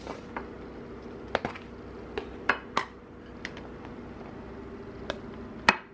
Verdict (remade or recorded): recorded